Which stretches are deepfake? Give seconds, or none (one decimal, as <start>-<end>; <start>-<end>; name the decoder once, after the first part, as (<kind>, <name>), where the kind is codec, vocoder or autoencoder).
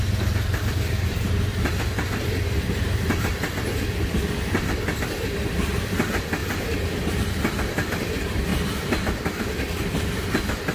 0.0-10.7 (vocoder, BigVGAN v2)